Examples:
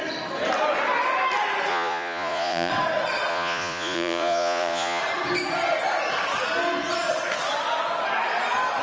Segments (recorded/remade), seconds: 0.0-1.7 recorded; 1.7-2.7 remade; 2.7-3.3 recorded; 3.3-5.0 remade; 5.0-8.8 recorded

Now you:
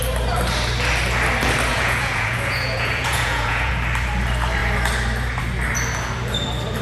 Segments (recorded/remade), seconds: 0.0-1.7 recorded; 1.7-3.7 remade; 3.7-6.8 recorded